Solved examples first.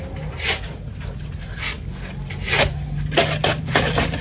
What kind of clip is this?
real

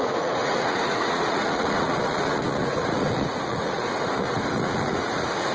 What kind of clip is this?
fake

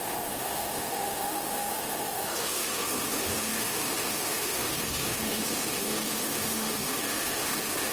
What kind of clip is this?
fake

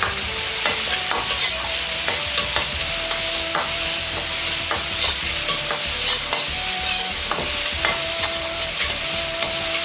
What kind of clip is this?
real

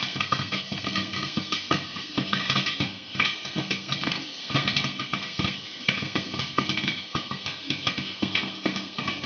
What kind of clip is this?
fake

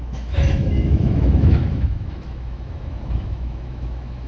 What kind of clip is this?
fake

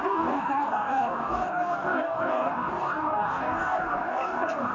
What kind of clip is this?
fake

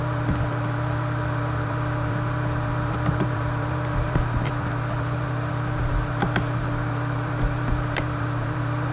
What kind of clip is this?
fake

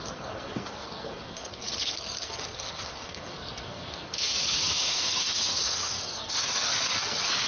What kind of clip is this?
fake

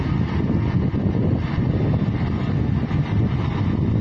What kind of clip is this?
real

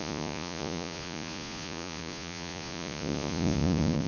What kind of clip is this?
fake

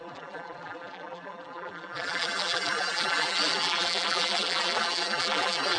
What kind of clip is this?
fake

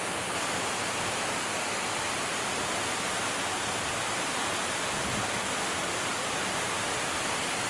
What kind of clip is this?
real